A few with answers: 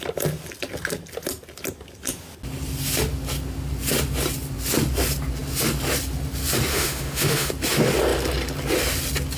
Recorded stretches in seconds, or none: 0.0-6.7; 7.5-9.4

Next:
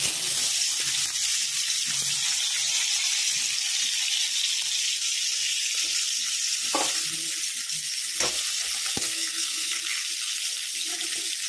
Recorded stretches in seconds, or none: 0.0-8.9; 9.8-11.5

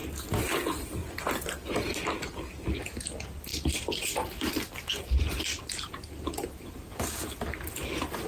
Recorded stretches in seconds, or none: 0.0-8.3

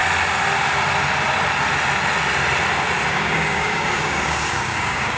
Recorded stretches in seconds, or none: 0.0-3.1

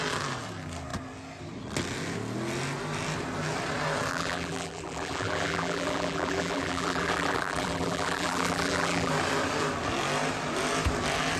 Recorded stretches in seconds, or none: 0.0-4.1; 9.1-11.4

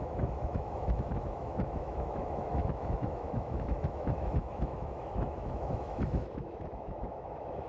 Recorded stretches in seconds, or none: none

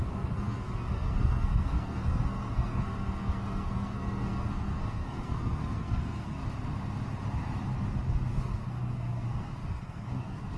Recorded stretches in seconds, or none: 6.4-8.3